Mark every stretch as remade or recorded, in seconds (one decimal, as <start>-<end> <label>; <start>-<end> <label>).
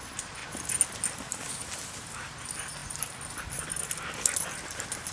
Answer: 0.0-5.1 recorded